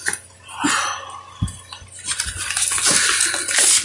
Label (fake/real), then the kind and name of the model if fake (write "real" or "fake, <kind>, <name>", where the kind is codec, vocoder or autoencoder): real